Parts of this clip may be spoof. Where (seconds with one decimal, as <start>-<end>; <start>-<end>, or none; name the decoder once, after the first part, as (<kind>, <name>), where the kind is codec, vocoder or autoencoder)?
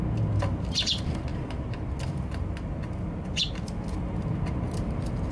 none